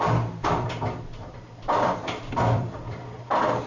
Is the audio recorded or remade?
remade